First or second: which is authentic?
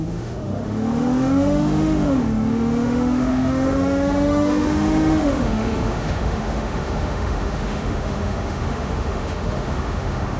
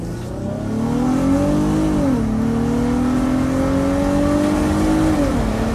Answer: second